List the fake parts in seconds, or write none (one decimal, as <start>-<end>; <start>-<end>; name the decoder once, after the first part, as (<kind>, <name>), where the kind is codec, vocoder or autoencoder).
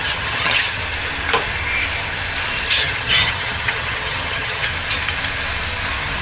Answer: 0.0-0.8 (vocoder, HiFi-GAN); 2.7-4.7